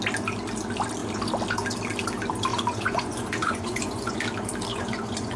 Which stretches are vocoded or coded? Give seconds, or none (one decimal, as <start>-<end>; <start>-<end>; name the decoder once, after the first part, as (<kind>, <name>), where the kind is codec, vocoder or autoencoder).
2.5-4.2 (vocoder, Vocos); 4.7-5.4